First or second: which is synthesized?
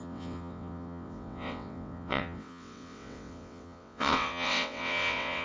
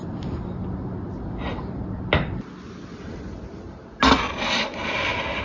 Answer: first